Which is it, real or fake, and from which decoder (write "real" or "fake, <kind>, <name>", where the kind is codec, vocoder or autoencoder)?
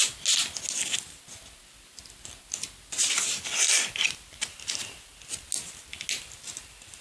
real